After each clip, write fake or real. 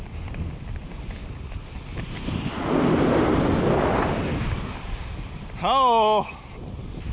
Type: real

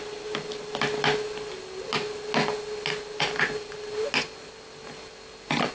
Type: real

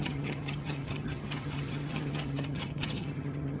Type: fake